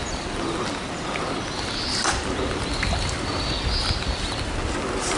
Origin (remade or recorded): recorded